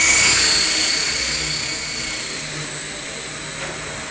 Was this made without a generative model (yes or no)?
yes